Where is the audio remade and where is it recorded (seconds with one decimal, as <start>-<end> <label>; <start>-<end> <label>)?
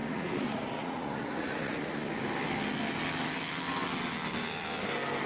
0.0-2.1 remade; 2.1-5.3 recorded